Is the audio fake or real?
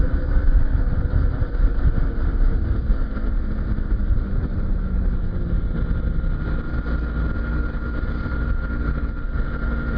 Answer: real